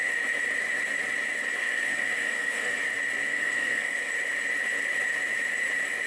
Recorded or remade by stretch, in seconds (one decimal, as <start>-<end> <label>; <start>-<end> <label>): 0.0-1.6 recorded; 1.6-2.8 remade; 2.8-3.3 recorded; 3.3-4.1 remade; 4.1-6.1 recorded